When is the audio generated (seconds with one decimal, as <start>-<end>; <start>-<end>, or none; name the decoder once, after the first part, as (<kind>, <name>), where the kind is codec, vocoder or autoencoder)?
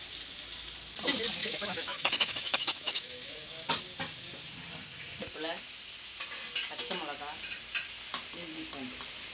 1.4-3.7 (autoencoder, DAC-VAE)